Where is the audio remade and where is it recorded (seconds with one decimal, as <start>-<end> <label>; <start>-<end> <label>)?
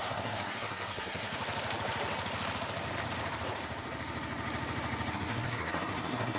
0.0-1.3 remade; 1.3-5.1 recorded; 5.1-6.4 remade